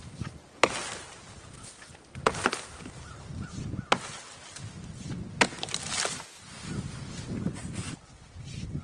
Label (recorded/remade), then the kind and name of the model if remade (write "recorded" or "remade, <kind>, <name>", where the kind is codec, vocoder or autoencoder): recorded